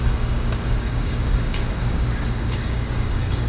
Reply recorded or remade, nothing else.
remade